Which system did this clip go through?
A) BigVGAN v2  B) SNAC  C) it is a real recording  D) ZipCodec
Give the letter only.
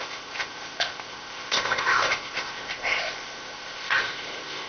D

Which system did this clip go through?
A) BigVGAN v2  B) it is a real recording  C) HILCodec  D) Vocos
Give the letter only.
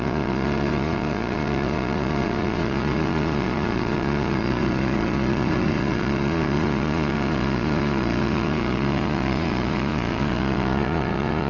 D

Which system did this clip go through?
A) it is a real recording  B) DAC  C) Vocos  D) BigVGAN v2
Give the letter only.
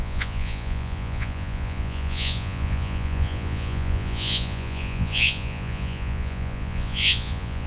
C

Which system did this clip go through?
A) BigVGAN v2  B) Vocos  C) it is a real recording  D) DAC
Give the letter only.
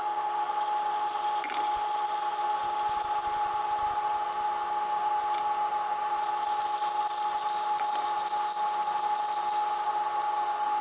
C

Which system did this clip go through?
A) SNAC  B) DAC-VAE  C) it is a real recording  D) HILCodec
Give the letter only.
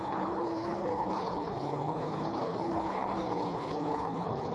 D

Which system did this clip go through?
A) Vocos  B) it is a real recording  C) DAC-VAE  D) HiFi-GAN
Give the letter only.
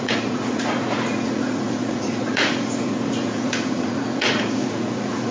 A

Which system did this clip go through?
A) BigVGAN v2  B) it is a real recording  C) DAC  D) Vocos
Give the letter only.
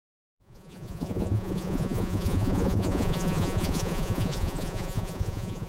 D